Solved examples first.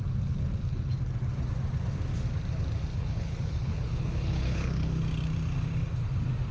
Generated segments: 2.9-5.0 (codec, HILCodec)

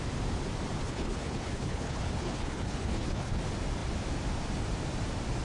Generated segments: 0.8-3.4 (codec, HILCodec)